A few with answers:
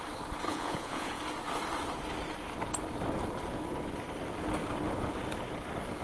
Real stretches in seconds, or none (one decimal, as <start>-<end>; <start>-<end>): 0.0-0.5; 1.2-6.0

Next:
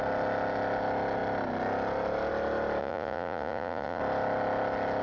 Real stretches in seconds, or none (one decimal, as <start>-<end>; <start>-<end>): 0.0-2.8; 4.0-5.0

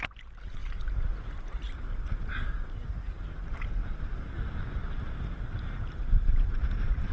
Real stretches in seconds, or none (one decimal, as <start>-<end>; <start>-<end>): 0.0-7.1